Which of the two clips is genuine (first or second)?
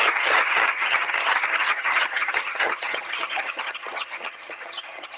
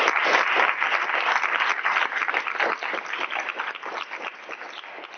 second